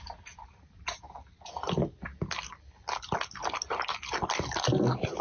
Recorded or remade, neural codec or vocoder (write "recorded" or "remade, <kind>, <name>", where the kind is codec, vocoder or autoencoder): recorded